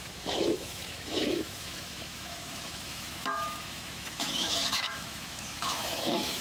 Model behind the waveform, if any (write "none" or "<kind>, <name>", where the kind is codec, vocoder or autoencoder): autoencoder, DAC-VAE